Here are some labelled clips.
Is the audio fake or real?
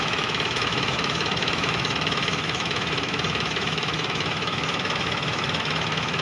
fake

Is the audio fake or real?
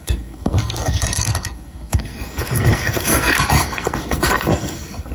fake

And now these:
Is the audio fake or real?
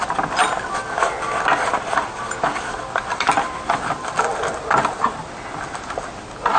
real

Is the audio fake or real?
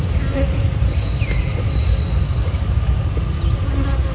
real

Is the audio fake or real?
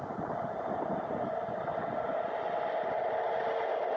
real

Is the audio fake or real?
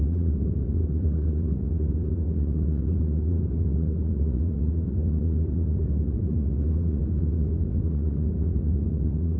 fake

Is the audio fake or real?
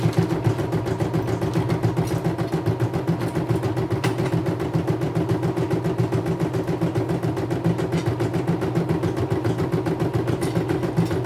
real